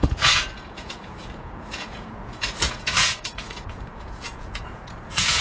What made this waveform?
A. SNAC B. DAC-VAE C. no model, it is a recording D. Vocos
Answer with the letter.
D